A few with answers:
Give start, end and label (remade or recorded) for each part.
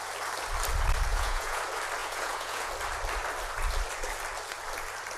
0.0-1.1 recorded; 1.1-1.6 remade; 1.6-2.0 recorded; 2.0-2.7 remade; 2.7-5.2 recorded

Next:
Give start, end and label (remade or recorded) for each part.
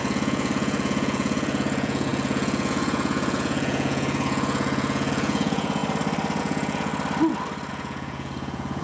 0.0-5.8 remade; 5.8-6.4 recorded; 6.4-6.9 remade; 6.9-7.7 recorded; 7.7-8.8 remade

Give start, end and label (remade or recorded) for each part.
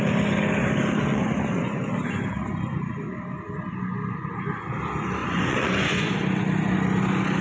0.0-1.1 recorded; 1.1-1.9 remade; 1.9-5.2 recorded; 5.2-6.1 remade; 6.1-7.4 recorded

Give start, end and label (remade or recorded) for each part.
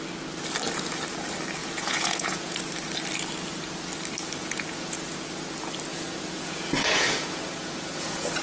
0.0-1.6 recorded; 1.6-2.6 remade; 2.6-4.4 recorded; 4.4-5.2 remade; 5.2-5.9 recorded; 5.9-8.4 remade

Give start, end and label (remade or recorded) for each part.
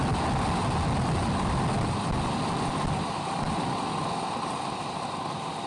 0.0-5.7 recorded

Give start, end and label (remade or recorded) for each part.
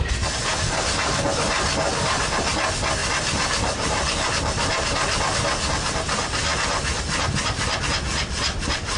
0.0-9.0 recorded